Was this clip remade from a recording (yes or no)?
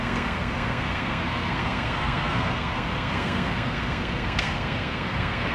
yes